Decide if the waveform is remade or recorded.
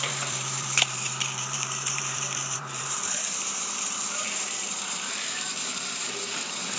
remade